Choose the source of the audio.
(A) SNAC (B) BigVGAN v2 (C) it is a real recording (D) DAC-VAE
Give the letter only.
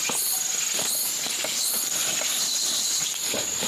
C